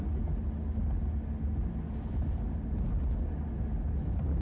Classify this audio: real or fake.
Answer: real